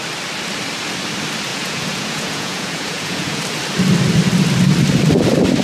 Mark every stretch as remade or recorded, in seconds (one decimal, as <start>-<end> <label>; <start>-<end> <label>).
0.0-1.5 recorded; 1.5-3.4 remade; 3.4-5.6 recorded